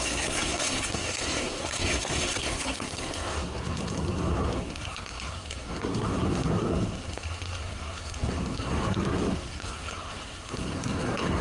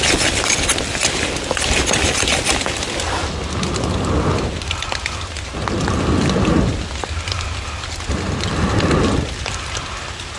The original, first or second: second